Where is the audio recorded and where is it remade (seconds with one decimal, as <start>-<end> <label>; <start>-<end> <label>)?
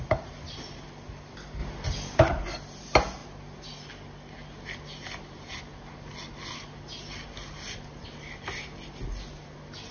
0.0-9.9 recorded